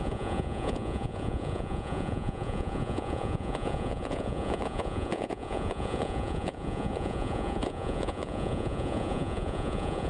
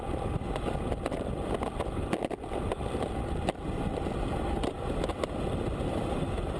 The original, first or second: second